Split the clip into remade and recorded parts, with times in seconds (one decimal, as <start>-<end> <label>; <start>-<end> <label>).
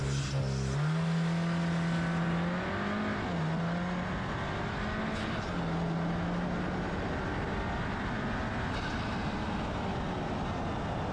0.0-11.1 recorded